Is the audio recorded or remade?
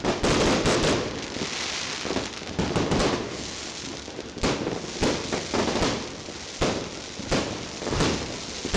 recorded